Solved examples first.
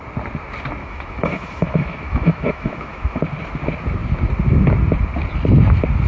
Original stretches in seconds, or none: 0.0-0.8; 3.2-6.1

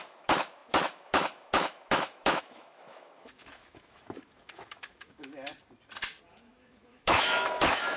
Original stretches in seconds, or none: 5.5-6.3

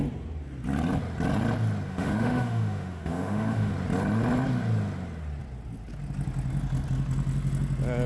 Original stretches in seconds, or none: 0.0-1.9; 3.7-8.1

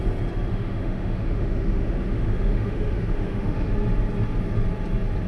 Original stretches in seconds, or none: 0.0-0.5; 3.7-5.3

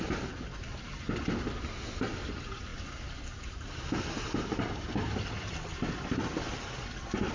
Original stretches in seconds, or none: 0.0-7.3

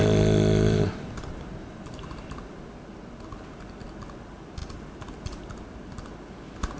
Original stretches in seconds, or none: 0.0-6.8